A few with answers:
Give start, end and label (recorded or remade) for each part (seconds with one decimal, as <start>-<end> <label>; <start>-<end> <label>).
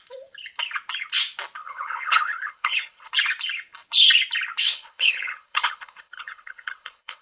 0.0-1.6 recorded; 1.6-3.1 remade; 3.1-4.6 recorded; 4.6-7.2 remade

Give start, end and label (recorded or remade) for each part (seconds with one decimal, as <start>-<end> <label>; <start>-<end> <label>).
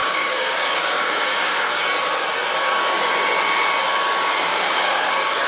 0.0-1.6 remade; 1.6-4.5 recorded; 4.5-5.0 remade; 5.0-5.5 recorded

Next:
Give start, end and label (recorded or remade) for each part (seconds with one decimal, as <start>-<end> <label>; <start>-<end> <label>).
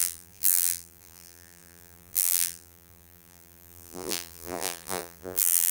0.0-5.7 remade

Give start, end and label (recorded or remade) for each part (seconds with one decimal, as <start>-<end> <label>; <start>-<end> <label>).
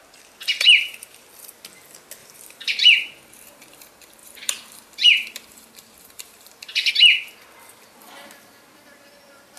0.0-0.5 recorded; 0.5-1.3 remade; 1.3-2.2 recorded; 2.2-3.8 remade; 3.8-4.2 recorded; 4.2-6.9 remade; 6.9-9.6 recorded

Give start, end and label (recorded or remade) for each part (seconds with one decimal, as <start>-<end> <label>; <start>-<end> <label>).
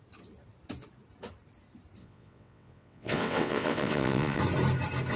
0.0-2.0 recorded; 2.0-4.4 remade; 4.4-5.2 recorded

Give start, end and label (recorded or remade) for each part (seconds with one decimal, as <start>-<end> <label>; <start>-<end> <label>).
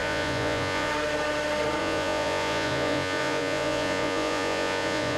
0.0-0.9 remade; 0.9-1.8 recorded; 1.8-5.2 remade